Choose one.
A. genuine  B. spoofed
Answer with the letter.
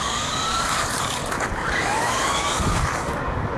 B